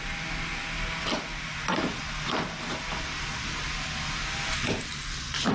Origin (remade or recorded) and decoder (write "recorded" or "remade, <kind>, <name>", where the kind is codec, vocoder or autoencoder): recorded